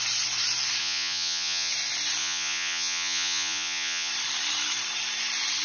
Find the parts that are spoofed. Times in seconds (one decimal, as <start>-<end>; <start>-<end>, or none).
0.8-1.7; 2.2-4.1